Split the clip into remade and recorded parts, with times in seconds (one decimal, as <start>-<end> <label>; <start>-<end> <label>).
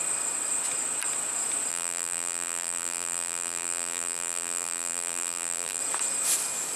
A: 0.0-1.7 recorded; 1.7-5.8 remade; 5.8-6.8 recorded